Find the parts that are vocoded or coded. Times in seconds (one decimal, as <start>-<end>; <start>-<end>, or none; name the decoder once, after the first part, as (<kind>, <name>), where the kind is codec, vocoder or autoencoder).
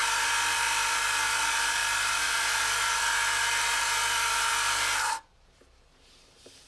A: 0.0-6.7 (vocoder, BigVGAN v2)